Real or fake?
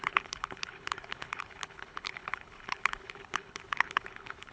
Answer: fake